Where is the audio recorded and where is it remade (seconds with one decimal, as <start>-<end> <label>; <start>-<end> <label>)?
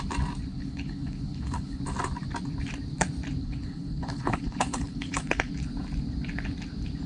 0.0-0.5 recorded; 0.5-1.8 remade; 1.8-3.4 recorded; 3.4-5.5 remade; 5.5-7.1 recorded